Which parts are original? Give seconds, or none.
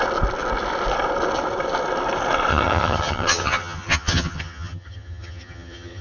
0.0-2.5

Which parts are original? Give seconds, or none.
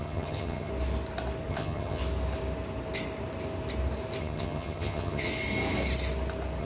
0.7-1.5; 2.0-4.2; 5.3-6.6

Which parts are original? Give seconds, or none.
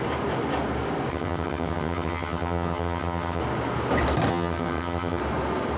0.0-1.1; 3.4-4.3; 5.2-5.8